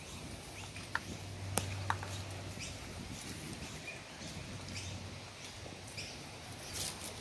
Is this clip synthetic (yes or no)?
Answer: no